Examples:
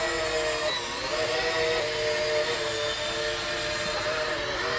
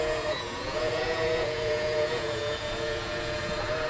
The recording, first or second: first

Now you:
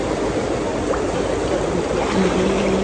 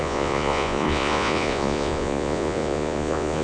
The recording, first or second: first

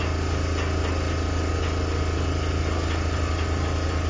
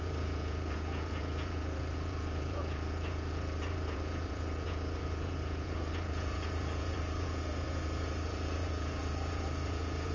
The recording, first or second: first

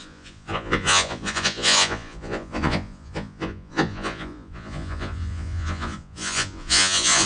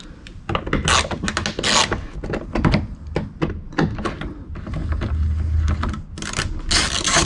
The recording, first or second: second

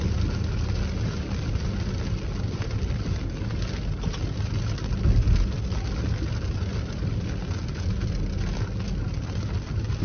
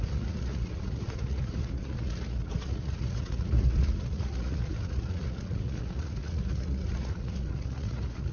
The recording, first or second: first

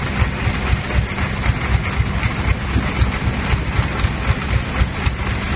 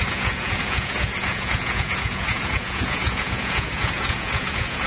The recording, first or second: first